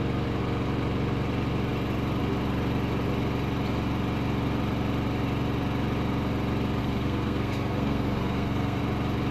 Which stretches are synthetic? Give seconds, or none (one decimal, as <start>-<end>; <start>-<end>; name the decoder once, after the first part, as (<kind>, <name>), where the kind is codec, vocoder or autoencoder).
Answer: 6.8-8.8 (codec, SNAC)